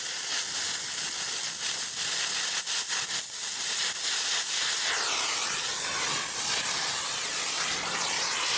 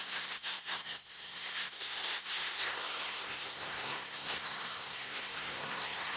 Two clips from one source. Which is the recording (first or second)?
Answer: first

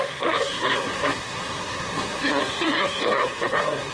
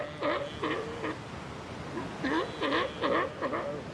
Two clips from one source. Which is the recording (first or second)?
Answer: second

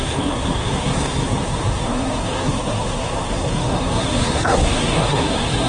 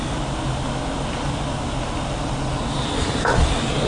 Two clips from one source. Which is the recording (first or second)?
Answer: second